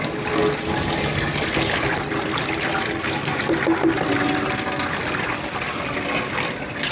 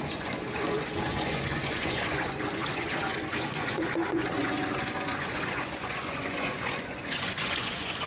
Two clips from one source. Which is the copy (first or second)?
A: second